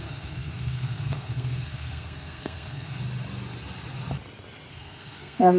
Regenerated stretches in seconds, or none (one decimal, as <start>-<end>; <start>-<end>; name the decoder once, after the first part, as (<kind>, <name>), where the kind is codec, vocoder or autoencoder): 0.0-3.0 (codec, SNAC); 4.7-5.6

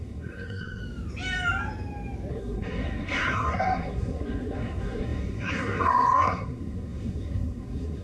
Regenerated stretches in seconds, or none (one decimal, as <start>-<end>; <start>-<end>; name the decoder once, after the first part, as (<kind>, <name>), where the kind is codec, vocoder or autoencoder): 0.0-0.8 (codec, SNAC); 2.3-8.0